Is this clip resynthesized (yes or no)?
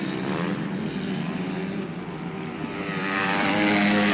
yes